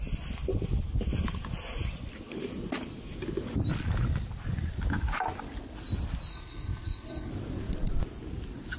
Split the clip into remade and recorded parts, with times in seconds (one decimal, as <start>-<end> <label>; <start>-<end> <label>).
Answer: 0.0-6.3 recorded; 6.3-7.3 remade; 7.3-8.8 recorded